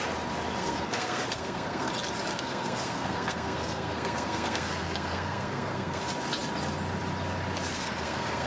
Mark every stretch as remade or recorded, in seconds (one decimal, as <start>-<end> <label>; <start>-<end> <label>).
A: 0.0-0.6 recorded; 0.6-1.9 remade; 1.9-2.3 recorded; 2.3-6.0 remade; 6.0-7.7 recorded; 7.7-8.5 remade